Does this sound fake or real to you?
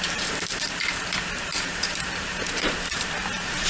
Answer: fake